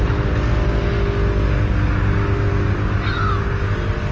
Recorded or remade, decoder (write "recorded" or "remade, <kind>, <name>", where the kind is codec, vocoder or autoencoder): recorded